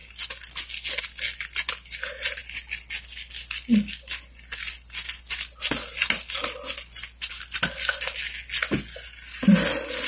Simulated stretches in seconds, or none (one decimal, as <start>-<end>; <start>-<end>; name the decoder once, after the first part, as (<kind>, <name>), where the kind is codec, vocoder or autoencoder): none